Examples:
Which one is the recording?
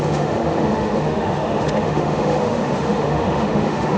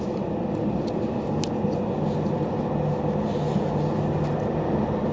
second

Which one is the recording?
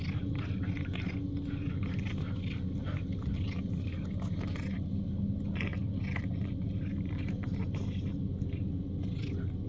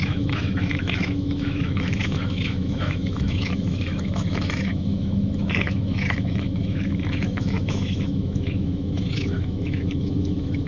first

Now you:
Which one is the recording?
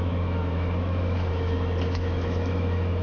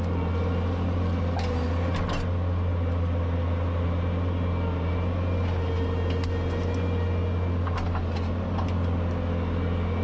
second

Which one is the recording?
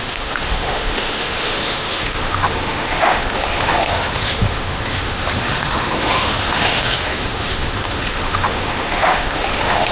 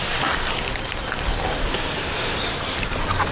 second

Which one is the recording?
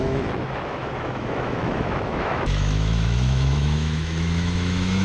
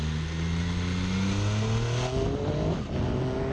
second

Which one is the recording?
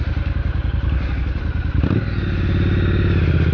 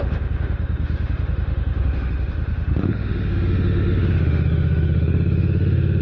first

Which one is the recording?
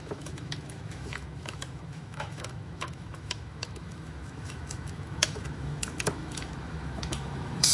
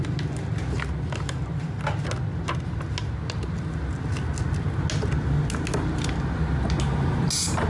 second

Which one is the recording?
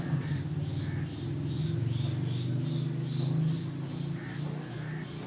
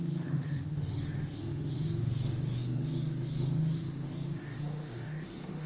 first